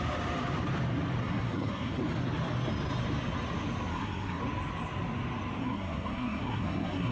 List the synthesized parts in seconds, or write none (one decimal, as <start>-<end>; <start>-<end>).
1.2-2.0; 3.9-4.4; 5.6-7.1